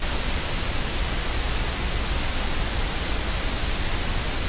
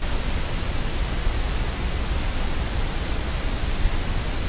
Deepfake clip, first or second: second